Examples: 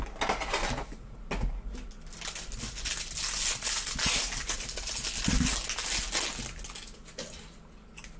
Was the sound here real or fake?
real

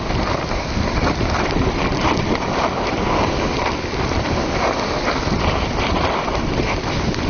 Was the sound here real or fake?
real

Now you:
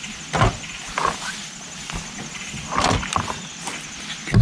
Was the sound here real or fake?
real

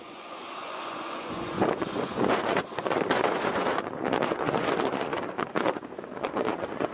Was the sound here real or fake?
fake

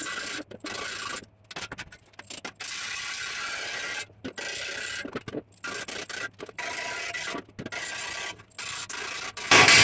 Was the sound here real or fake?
real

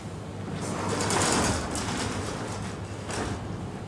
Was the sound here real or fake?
real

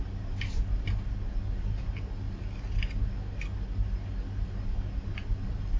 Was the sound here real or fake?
real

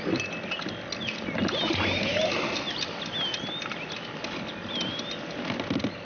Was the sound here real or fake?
real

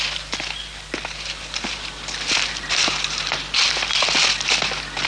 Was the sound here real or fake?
real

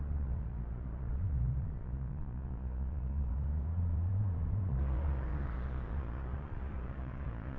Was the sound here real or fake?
fake